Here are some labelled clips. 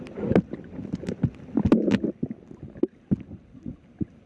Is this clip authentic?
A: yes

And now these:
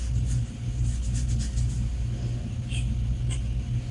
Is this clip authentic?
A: yes